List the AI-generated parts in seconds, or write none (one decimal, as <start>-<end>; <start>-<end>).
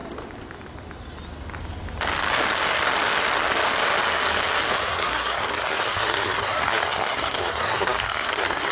4.8-8.7